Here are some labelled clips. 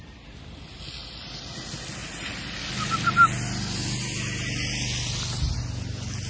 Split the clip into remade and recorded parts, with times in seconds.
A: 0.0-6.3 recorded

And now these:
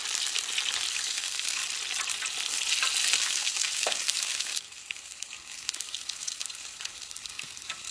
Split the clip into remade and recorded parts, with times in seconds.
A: 0.0-1.1 recorded; 1.1-1.6 remade; 1.6-3.2 recorded; 3.2-7.9 remade

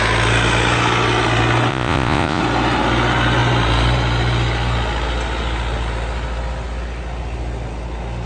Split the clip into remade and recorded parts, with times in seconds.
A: 0.0-1.7 recorded; 1.7-2.4 remade; 2.4-8.3 recorded